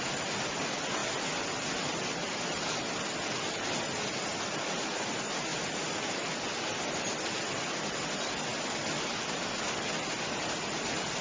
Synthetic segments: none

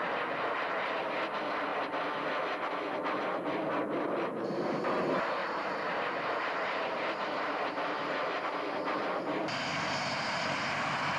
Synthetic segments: 0.0-1.0 (vocoder, BigVGAN v2); 5.4-8.4